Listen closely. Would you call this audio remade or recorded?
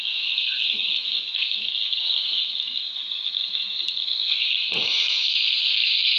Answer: remade